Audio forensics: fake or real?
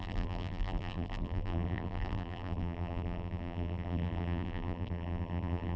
fake